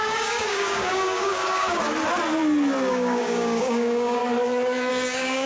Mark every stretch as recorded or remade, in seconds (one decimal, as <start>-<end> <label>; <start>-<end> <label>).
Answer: 0.0-1.8 remade; 1.8-2.9 recorded; 2.9-4.2 remade; 4.2-4.9 recorded; 4.9-5.5 remade